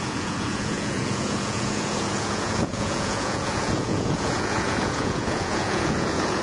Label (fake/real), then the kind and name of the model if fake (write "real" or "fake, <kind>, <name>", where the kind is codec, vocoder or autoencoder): fake, vocoder, Vocos